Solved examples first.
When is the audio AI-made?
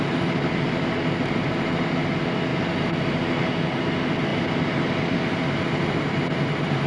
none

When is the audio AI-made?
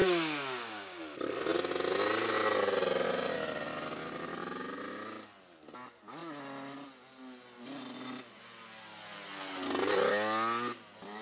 0.0-1.0 (codec, DAC)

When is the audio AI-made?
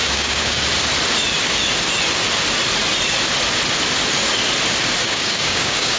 0.0-0.6 (codec, DAC); 5.0-6.0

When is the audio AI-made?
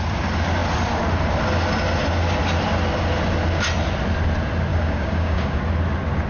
4.7-5.6 (codec, DAC)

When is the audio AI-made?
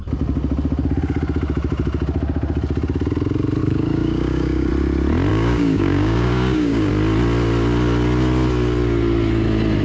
3.6-4.7 (codec, DAC); 5.3-6.9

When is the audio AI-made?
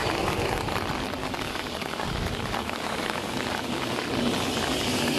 0.0-0.6 (codec, DAC); 1.2-4.1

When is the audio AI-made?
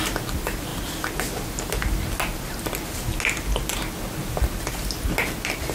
none